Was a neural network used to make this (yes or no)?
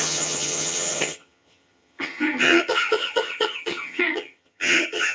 yes